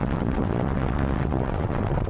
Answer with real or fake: fake